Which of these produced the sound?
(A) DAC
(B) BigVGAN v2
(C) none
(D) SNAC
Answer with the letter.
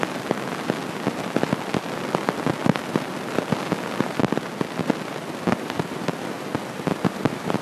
C